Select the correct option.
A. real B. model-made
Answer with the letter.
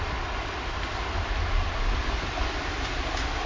A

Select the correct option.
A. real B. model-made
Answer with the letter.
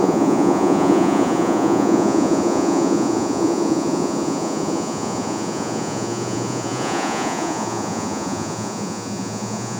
B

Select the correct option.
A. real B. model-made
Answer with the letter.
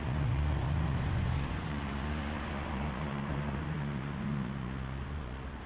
B